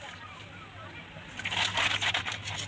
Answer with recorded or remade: recorded